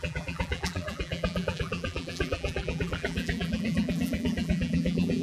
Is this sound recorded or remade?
remade